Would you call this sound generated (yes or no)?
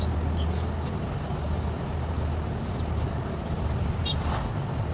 no